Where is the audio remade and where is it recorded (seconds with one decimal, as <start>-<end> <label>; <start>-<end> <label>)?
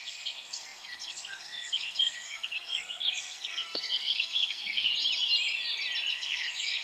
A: 0.0-4.9 remade; 4.9-6.1 recorded; 6.1-6.8 remade